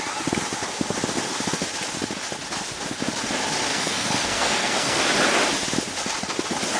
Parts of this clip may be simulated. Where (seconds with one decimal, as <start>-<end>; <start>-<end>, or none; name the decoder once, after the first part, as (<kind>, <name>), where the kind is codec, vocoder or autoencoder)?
3.7-5.0 (codec, SNAC)